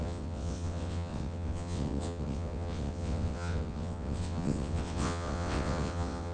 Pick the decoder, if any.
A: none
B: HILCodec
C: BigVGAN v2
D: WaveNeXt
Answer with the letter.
D